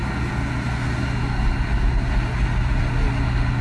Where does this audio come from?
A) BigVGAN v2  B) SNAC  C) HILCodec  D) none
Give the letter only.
D